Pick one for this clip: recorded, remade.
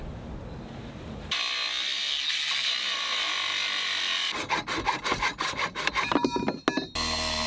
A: recorded